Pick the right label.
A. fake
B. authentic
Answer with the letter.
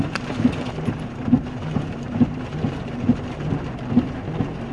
A